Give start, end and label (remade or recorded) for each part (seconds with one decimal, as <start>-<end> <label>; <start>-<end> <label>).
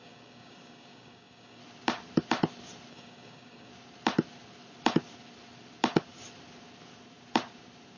0.0-1.6 remade; 1.6-2.9 recorded; 2.9-3.7 remade; 3.7-8.0 recorded